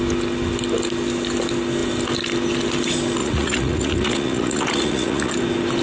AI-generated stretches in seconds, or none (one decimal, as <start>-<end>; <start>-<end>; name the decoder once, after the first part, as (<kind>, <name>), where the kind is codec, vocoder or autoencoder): 3.2-5.3 (vocoder, Vocos)